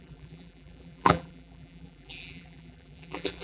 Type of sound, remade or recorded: remade